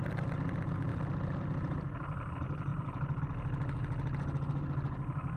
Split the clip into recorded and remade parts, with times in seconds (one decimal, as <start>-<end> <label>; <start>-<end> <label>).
0.0-0.9 recorded; 0.9-2.3 remade; 2.3-2.7 recorded; 2.7-3.2 remade; 3.2-5.4 recorded